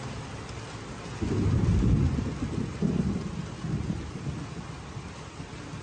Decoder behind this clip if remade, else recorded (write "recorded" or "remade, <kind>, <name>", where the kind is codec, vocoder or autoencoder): recorded